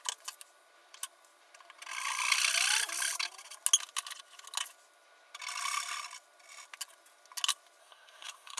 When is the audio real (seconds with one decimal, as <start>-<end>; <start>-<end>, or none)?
0.0-7.8